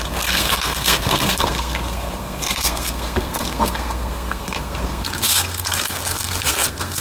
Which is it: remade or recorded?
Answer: remade